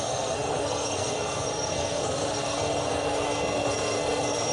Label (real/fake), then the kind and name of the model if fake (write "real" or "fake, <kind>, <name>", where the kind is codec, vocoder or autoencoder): fake, codec, SNAC